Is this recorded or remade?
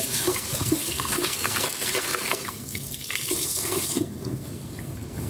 remade